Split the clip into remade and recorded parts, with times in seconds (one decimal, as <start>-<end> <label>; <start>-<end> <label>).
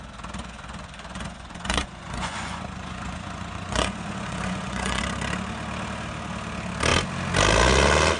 0.0-0.4 recorded; 0.4-5.0 remade; 5.0-8.2 recorded